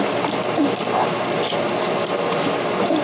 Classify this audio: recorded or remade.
recorded